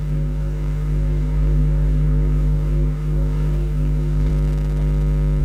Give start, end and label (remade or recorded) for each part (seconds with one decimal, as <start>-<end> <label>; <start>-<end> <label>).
0.0-4.3 remade; 4.3-5.4 recorded